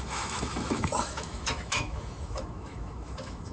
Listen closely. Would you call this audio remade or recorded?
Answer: remade